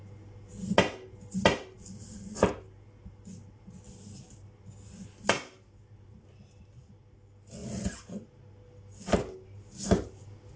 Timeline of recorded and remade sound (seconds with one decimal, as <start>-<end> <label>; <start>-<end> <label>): 0.0-10.6 recorded